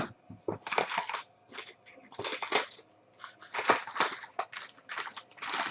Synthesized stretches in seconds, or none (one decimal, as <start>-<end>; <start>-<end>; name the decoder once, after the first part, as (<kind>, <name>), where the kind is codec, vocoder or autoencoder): none

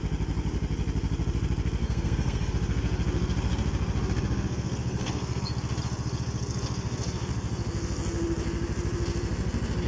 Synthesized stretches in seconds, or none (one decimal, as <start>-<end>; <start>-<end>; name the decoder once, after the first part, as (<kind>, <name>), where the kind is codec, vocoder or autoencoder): 1.8-2.5 (codec, SNAC); 4.9-5.4